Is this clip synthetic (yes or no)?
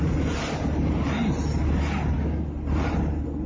no